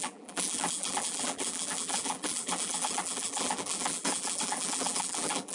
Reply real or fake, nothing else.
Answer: fake